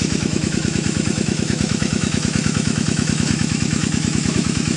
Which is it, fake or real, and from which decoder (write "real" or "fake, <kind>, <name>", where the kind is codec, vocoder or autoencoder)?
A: fake, autoencoder, DAC-VAE